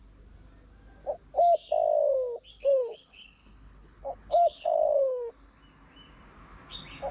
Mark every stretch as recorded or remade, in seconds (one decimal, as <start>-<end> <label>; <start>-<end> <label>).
0.0-2.5 recorded; 2.5-5.3 remade; 5.3-7.1 recorded